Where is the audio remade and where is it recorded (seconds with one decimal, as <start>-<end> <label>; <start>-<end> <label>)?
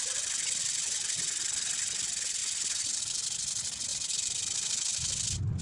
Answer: 0.0-5.6 recorded